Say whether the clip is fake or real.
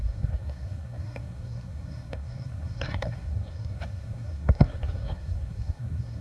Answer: fake